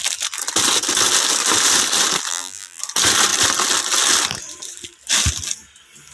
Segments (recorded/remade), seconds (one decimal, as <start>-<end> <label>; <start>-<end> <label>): 0.0-2.3 recorded; 2.3-2.8 remade; 2.8-6.1 recorded